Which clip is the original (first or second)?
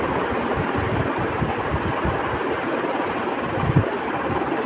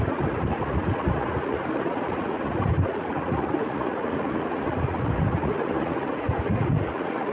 first